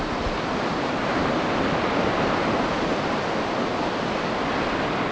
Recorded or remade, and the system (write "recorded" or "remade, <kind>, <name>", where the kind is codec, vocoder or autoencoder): recorded